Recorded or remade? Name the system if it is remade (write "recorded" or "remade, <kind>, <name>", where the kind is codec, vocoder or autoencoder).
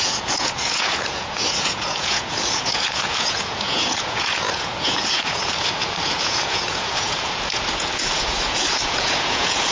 remade, vocoder, Vocos